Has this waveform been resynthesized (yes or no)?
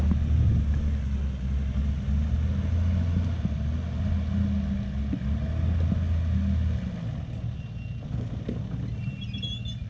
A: no